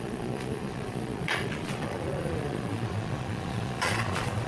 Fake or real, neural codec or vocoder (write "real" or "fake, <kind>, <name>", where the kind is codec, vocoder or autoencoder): fake, vocoder, Vocos